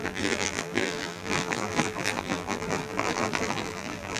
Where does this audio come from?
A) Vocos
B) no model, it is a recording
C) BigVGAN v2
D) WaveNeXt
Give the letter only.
C